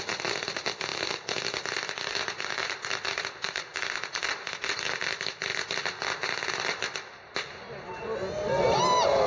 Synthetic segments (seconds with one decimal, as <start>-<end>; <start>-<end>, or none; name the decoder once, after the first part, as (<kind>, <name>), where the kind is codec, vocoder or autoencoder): none